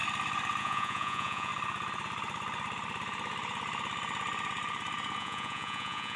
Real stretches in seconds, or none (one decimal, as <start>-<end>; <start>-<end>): 0.0-0.6; 1.5-5.2